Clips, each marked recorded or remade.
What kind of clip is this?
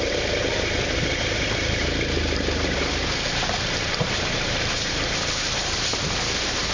remade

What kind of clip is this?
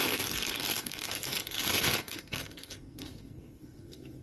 remade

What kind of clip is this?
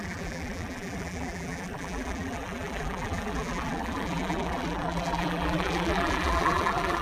remade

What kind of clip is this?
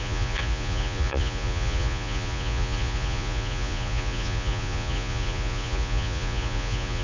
remade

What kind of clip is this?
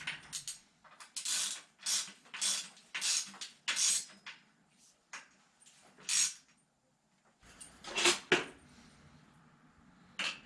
recorded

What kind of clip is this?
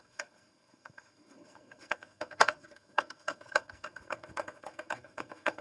remade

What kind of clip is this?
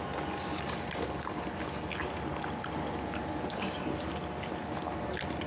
recorded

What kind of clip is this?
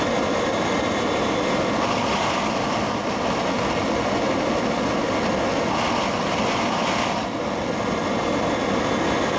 recorded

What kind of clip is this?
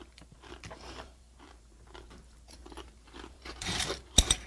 remade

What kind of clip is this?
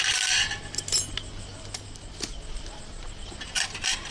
recorded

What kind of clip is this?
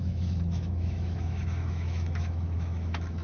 remade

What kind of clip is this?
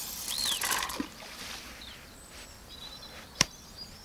remade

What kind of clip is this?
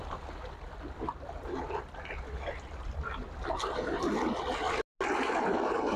recorded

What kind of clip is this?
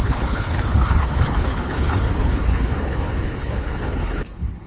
remade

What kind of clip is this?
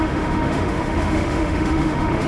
remade